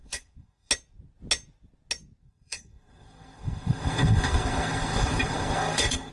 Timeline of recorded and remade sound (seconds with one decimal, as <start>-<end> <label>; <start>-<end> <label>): 0.0-0.7 remade; 0.7-2.2 recorded; 2.2-6.1 remade